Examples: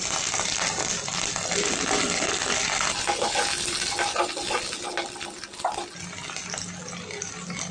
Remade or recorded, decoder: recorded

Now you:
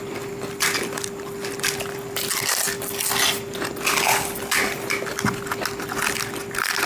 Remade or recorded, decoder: recorded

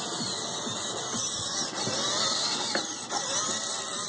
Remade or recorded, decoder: recorded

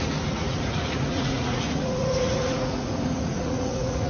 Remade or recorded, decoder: remade, vocoder, Vocos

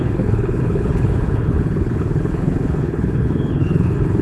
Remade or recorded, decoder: remade, codec, HILCodec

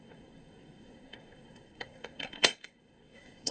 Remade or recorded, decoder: remade, codec, SNAC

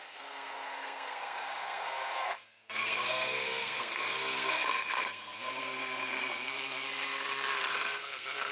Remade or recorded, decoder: remade, codec, SNAC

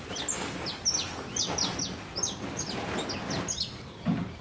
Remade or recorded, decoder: recorded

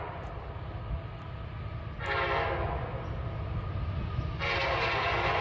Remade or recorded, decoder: recorded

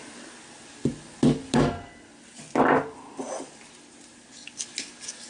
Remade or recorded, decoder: recorded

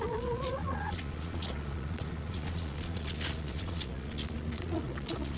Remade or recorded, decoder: remade, vocoder, Vocos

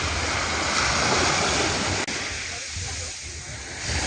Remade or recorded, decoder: recorded